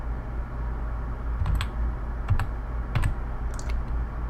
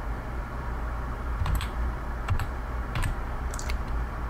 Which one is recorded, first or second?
first